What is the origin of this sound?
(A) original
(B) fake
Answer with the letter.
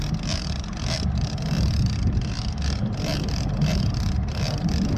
A